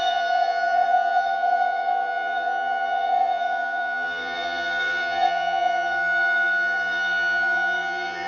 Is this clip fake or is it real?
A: fake